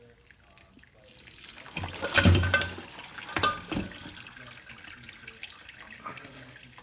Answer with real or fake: real